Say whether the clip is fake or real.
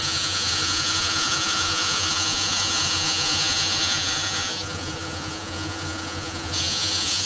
fake